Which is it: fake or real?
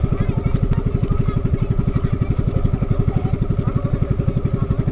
real